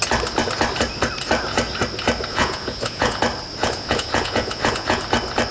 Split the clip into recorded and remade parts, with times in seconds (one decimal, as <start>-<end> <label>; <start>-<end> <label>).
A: 0.0-2.3 recorded; 2.3-3.2 remade; 3.2-3.6 recorded; 3.6-5.0 remade; 5.0-5.5 recorded